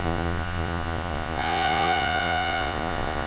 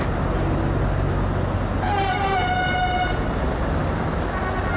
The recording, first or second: second